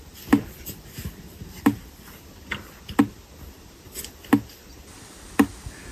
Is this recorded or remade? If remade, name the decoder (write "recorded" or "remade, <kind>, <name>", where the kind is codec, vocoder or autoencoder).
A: recorded